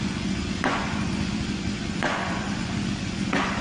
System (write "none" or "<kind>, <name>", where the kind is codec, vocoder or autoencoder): vocoder, Vocos